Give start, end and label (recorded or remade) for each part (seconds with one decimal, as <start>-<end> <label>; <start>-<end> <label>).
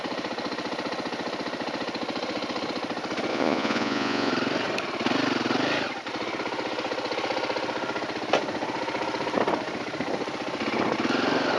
0.0-3.3 recorded; 3.3-4.3 remade; 4.3-11.6 recorded